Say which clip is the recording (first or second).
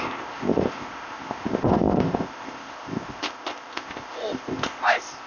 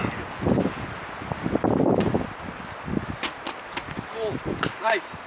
second